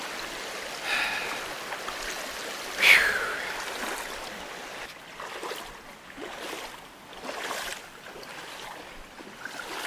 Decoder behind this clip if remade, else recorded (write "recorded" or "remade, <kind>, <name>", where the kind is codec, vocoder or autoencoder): recorded